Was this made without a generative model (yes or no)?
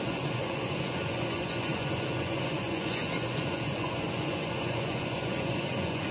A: no